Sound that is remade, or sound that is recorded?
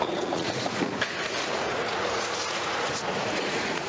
remade